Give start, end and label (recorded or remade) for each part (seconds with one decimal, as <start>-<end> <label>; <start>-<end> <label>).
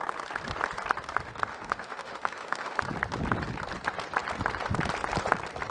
0.0-1.5 recorded; 1.5-2.8 remade; 2.8-5.7 recorded